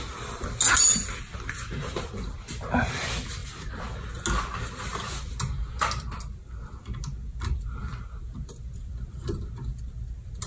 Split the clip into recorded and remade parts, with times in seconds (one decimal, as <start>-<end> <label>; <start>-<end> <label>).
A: 0.0-10.5 recorded